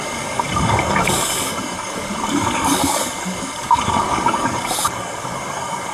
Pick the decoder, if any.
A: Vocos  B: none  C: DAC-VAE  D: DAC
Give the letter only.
D